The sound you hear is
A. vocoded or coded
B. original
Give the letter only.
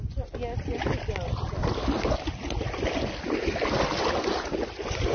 B